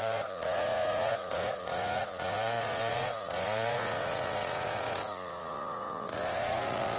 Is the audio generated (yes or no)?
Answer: yes